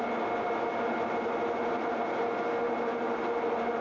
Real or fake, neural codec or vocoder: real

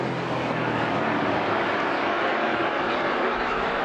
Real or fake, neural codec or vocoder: fake, codec, DAC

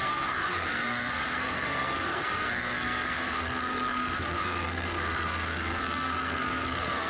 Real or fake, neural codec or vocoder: fake, codec, SNAC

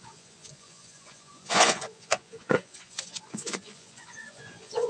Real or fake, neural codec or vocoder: fake, vocoder, Vocos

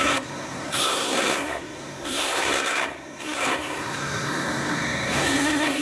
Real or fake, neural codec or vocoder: fake, codec, SNAC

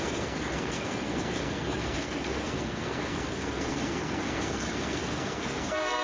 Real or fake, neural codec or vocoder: fake, codec, SNAC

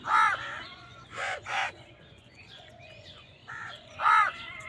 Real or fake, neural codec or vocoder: fake, vocoder, Vocos